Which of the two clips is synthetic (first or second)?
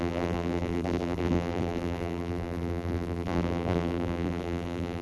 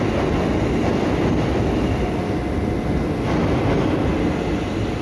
first